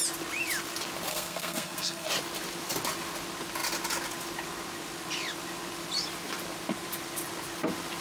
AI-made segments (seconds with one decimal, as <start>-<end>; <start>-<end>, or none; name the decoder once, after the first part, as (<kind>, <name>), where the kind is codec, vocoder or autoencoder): 1.1-2.1 (codec, SNAC)